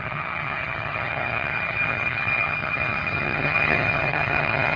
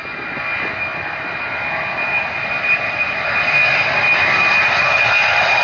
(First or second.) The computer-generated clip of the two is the first